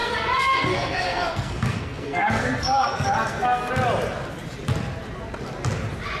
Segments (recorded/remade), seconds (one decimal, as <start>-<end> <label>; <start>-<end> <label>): 0.0-3.7 remade; 3.7-6.2 recorded